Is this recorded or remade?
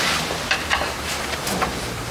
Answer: recorded